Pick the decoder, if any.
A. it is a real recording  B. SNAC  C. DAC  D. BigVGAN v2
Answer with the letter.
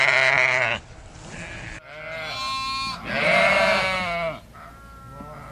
A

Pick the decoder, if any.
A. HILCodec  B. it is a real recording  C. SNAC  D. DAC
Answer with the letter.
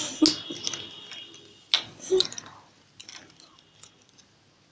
B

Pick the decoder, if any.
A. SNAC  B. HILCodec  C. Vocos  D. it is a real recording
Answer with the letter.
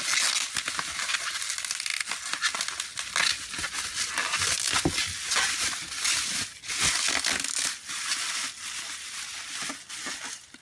D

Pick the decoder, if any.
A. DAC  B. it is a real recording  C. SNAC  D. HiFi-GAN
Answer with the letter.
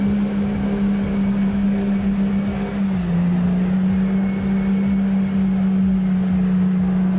B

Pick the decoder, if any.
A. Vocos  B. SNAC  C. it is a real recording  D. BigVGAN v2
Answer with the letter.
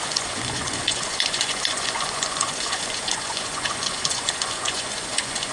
A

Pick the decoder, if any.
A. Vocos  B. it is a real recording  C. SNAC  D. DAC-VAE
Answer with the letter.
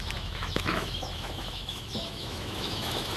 D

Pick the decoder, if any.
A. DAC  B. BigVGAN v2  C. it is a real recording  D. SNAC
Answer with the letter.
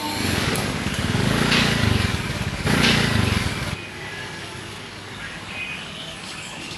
A